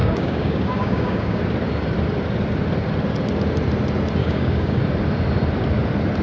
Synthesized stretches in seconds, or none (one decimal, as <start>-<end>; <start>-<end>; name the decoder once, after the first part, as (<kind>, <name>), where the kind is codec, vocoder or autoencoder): 0.0-1.4 (codec, DAC); 4.2-4.8